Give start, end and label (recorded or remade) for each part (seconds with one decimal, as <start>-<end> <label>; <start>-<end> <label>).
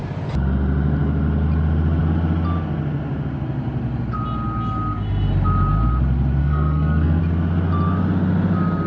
0.0-6.4 recorded; 6.4-7.2 remade; 7.2-8.9 recorded